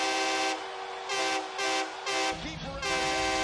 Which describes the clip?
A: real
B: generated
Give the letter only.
A